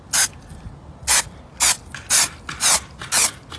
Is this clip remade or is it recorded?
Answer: recorded